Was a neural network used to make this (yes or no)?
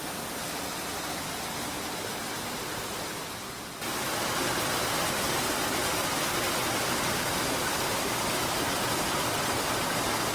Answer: no